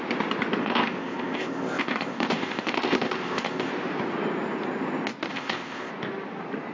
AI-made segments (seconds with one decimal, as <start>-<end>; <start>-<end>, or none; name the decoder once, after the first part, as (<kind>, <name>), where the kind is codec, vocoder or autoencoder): 0.6-3.7 (codec, ZipCodec); 5.3-5.9